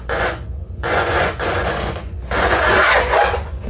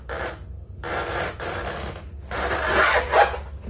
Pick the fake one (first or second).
first